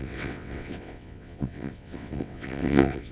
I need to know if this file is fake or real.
fake